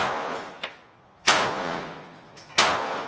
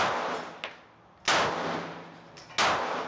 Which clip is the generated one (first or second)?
first